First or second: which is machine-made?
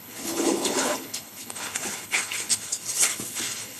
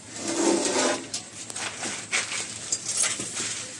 first